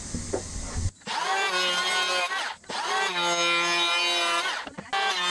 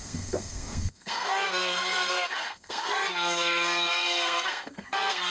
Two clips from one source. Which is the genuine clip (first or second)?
first